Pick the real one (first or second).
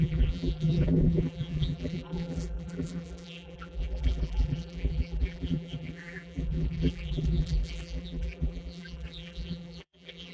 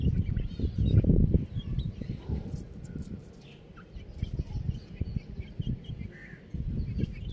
second